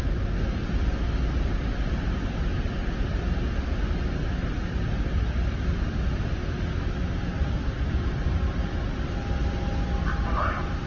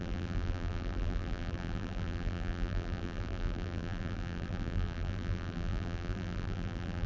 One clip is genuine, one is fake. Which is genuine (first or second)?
first